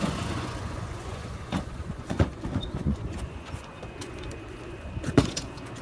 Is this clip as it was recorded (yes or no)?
no